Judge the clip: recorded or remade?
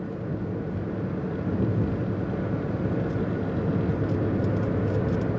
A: recorded